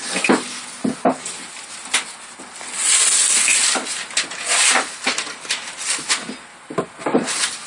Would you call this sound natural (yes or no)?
yes